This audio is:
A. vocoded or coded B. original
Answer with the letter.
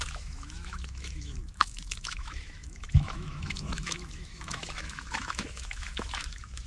A